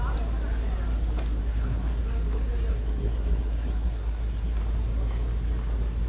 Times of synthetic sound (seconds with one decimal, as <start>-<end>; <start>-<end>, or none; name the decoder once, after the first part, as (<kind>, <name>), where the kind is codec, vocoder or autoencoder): 1.4-2.0 (codec, SNAC); 2.7-4.6